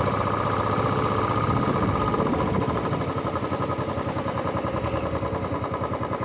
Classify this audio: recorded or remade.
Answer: recorded